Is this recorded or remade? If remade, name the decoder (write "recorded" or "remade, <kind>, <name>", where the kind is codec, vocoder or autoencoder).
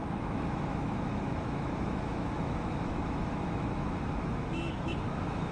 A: remade, autoencoder, DAC-VAE